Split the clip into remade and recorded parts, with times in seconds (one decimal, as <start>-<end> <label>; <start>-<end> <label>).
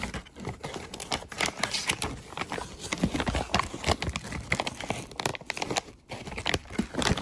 0.0-7.2 recorded